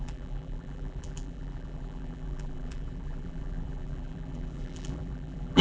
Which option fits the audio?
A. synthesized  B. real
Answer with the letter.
A